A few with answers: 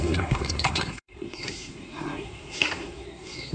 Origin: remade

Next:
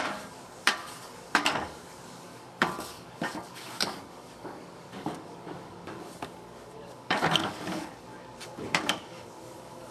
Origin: remade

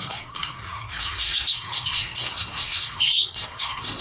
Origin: remade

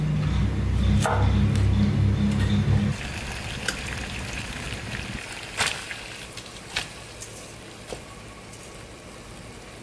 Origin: recorded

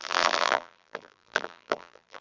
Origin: remade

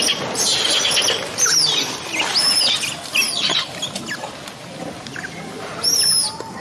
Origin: recorded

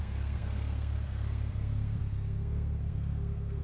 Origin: remade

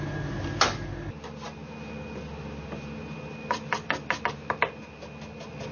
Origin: recorded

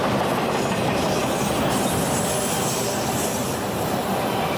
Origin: recorded